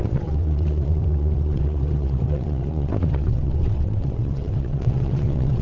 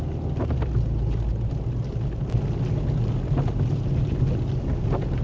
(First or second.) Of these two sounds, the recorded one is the second